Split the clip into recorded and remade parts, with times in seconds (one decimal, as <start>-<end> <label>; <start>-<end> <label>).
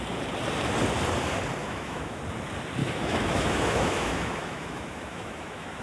0.0-1.6 recorded; 1.6-2.2 remade; 2.2-2.8 recorded; 2.8-5.8 remade